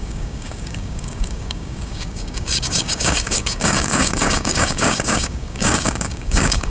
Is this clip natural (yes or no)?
no